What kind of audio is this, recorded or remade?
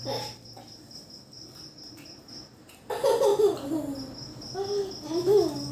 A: recorded